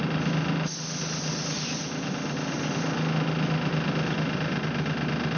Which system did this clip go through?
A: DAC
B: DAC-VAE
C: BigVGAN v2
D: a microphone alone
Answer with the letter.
D